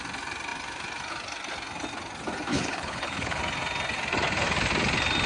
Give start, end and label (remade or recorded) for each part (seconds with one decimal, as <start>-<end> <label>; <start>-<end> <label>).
0.0-2.5 recorded; 2.5-3.4 remade; 3.4-5.3 recorded